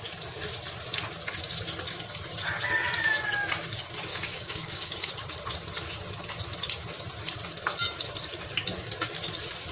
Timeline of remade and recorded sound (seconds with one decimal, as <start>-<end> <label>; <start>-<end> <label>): 0.0-4.1 recorded; 4.1-5.1 remade; 5.1-9.7 recorded